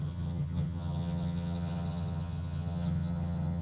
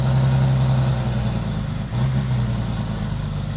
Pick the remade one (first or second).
first